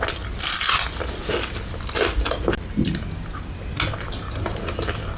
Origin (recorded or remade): recorded